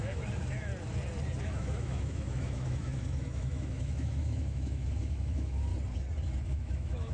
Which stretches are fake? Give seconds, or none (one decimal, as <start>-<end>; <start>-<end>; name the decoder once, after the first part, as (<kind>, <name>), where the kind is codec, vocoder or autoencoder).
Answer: 0.0-0.7 (autoencoder, DAC-VAE); 1.4-5.7; 6.4-7.1